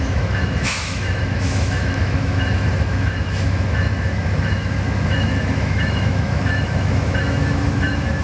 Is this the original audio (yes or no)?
no